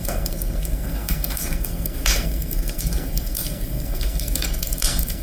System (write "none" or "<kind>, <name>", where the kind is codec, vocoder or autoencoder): codec, SNAC